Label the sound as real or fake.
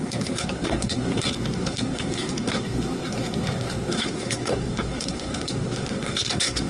fake